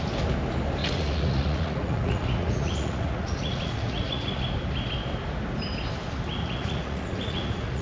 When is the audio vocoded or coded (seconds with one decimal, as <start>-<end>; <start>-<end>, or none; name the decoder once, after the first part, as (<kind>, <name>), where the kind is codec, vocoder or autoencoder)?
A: 0.8-4.4 (vocoder, Vocos); 6.4-7.8